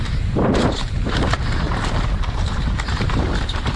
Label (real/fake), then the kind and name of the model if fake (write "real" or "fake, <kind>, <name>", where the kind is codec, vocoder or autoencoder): fake, vocoder, BigVGAN v2